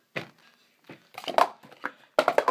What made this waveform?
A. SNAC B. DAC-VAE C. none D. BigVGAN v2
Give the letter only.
C